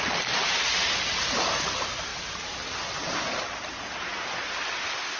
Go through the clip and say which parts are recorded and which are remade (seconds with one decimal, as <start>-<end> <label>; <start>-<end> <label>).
0.0-5.2 recorded